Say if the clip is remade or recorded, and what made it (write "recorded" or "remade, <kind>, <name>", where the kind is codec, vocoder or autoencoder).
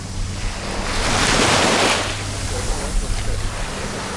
recorded